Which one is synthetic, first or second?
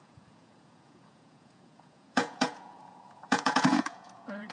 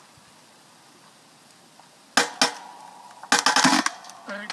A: first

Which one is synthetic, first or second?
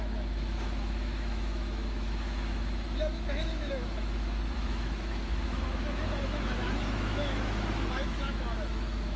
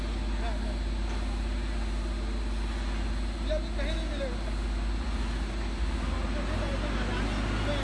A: first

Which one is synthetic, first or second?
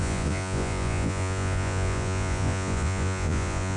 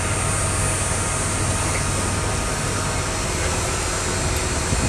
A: first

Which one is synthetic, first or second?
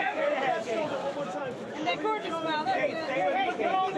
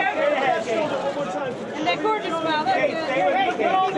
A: first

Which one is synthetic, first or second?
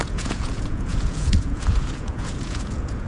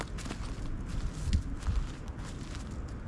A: first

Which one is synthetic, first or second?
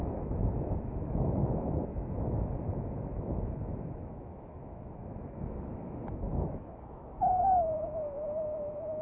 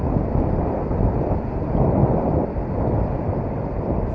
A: first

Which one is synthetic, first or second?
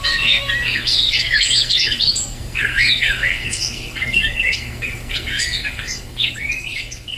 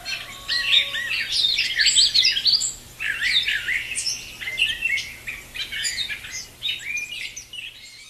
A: first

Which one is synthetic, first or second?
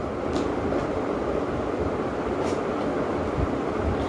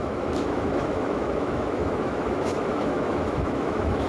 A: second